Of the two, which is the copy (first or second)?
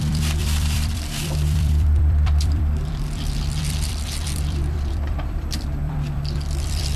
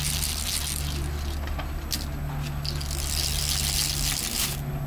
first